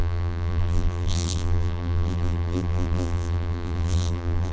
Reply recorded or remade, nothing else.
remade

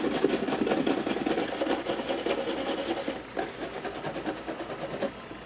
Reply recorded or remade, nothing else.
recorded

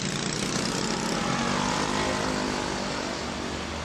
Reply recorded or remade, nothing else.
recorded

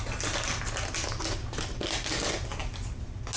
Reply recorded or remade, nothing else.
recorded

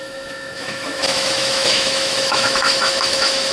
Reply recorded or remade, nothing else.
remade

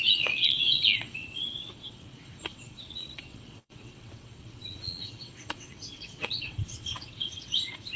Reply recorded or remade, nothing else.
remade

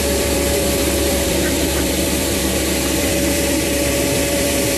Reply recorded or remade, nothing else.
remade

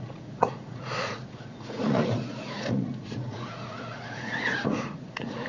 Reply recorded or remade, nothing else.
remade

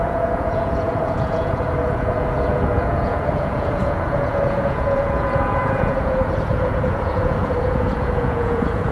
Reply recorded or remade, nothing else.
remade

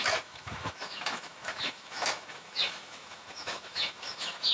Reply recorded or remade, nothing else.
remade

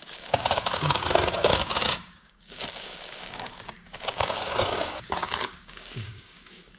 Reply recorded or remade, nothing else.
remade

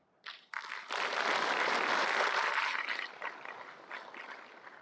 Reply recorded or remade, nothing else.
recorded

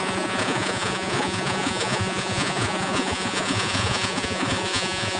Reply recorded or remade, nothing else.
remade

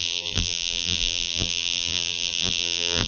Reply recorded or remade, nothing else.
remade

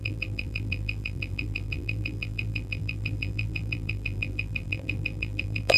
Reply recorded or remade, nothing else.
remade